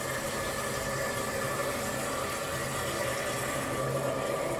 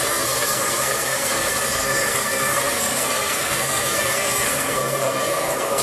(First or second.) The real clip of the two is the first